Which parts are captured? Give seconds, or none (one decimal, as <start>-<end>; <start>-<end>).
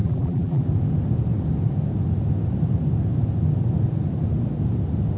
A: 0.6-5.2